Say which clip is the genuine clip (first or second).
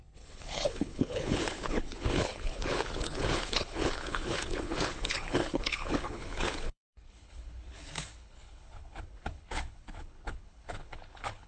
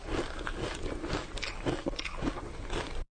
second